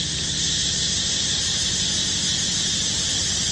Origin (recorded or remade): recorded